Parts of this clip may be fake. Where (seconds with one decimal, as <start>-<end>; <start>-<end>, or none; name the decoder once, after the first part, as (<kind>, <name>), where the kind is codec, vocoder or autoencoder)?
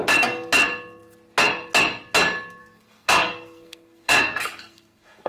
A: 2.6-5.3 (codec, SNAC)